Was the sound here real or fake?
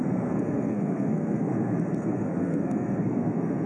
fake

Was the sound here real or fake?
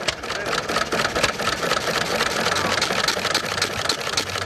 real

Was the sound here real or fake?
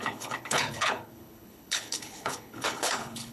fake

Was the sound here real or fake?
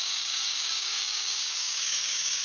fake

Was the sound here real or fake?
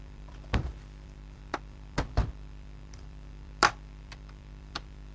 fake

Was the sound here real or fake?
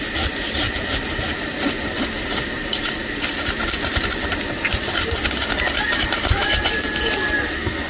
real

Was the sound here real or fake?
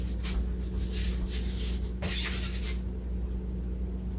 real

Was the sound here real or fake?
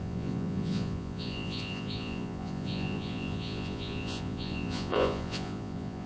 fake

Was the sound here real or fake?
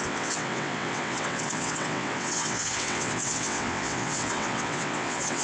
fake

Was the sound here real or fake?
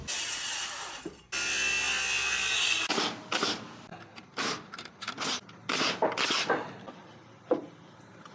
real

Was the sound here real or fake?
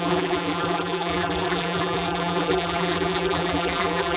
fake